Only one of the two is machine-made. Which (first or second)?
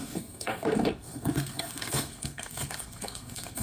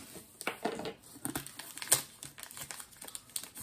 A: first